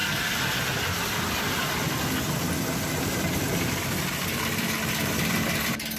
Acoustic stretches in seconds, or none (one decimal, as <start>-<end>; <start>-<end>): 0.0-6.0